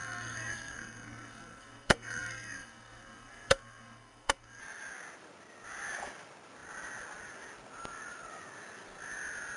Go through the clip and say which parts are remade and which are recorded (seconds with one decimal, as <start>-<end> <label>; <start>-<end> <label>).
0.0-4.6 remade; 4.6-9.6 recorded